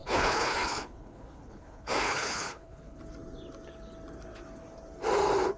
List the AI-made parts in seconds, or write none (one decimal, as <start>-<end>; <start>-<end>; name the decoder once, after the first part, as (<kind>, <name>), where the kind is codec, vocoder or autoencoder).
0.0-3.0 (codec, HILCodec)